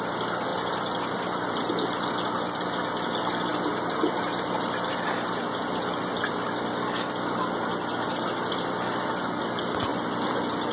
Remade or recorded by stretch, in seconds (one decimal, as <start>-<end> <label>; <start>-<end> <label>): 0.0-10.7 recorded